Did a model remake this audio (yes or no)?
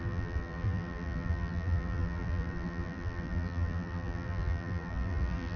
yes